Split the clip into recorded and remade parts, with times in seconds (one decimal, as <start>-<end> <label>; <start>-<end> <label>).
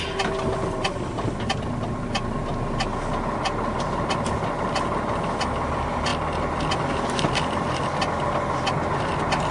0.0-9.5 recorded